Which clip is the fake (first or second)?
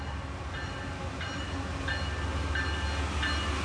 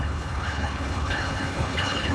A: second